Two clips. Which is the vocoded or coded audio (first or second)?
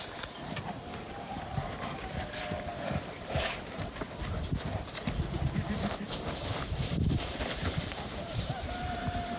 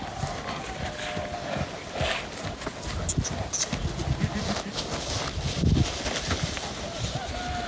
first